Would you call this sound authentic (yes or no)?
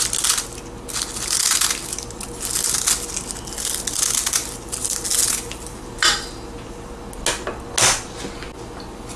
yes